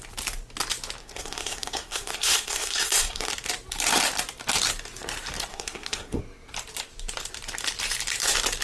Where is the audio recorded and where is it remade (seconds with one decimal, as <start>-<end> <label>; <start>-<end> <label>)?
0.0-1.0 recorded; 1.0-3.3 remade; 3.3-5.5 recorded; 5.5-6.2 remade; 6.2-8.6 recorded

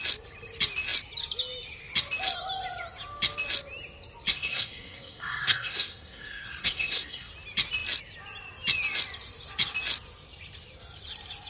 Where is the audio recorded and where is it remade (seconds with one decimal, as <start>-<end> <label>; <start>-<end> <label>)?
0.0-4.3 recorded; 4.3-7.3 remade; 7.3-11.5 recorded

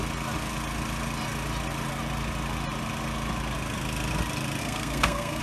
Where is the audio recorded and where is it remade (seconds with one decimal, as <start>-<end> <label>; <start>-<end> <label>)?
0.0-4.6 recorded; 4.6-5.4 remade

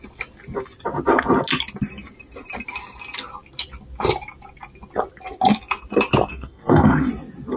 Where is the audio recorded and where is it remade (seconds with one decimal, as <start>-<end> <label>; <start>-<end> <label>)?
0.0-6.3 recorded; 6.3-7.1 remade; 7.1-7.6 recorded